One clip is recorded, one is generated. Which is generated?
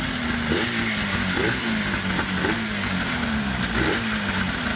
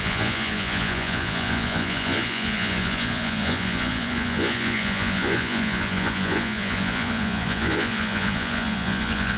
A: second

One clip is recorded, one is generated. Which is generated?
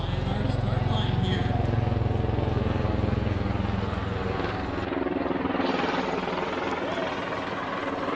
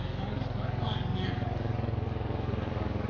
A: second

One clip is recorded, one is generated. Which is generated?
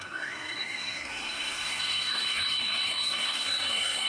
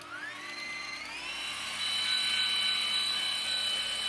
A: first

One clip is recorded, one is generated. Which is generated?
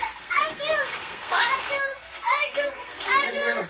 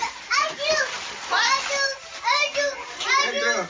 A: first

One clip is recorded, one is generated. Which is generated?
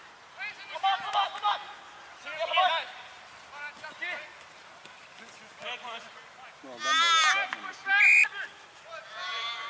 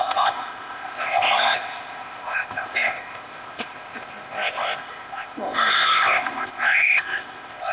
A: second